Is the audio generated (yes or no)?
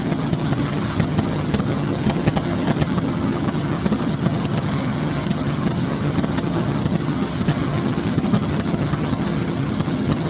yes